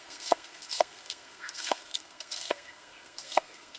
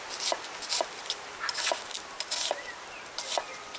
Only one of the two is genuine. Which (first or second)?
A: second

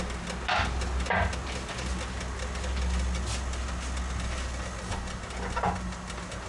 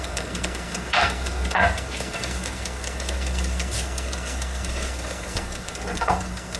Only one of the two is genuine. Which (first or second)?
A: first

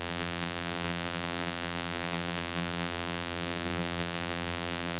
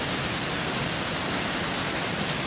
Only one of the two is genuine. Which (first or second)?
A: second